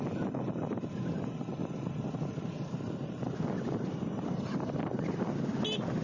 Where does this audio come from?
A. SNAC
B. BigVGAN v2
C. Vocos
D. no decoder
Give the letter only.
D